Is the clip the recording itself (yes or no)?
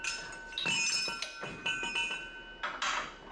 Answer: yes